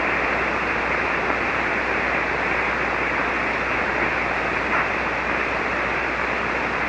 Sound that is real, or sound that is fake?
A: real